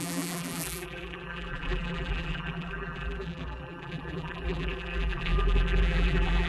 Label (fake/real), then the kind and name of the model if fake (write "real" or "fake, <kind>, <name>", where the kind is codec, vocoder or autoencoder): fake, vocoder, BigVGAN v2